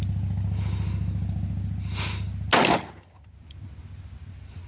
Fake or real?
real